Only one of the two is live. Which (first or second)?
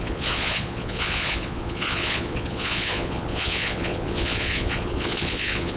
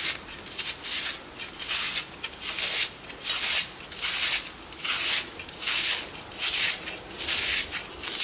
second